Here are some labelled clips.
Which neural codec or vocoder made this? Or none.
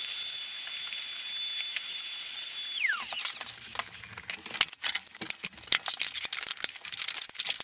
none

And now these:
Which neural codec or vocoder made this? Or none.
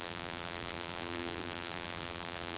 vocoder, BigVGAN v2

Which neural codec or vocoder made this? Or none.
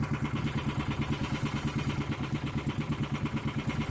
none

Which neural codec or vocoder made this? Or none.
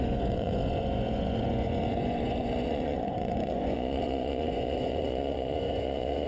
vocoder, Vocos